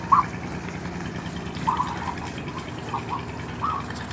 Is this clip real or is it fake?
real